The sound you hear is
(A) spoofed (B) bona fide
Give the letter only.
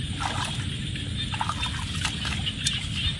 B